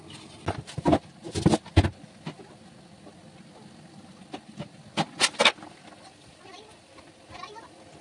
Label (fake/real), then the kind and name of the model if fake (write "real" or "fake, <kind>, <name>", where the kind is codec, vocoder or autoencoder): real